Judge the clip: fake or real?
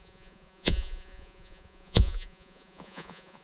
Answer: fake